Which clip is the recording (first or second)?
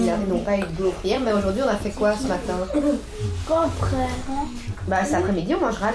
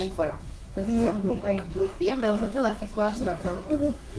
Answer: first